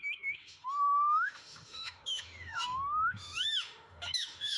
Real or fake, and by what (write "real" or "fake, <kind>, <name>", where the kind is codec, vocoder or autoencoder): fake, autoencoder, DAC-VAE